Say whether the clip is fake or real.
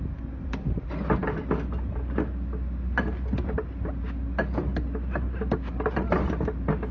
real